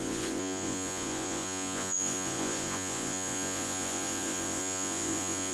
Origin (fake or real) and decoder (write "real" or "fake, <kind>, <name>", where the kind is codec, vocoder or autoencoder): fake, vocoder, Vocos